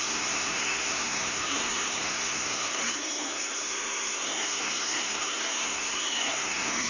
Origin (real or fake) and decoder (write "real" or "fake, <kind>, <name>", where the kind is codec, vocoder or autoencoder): fake, codec, SNAC